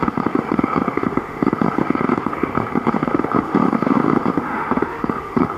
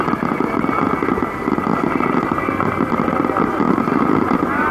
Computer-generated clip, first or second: first